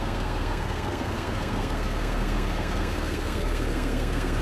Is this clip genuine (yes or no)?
no